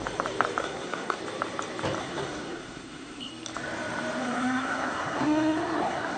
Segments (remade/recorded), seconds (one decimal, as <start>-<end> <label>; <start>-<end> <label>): 0.0-0.6 recorded; 0.6-1.2 remade; 1.2-2.0 recorded; 2.0-3.3 remade; 3.3-4.2 recorded; 4.2-6.2 remade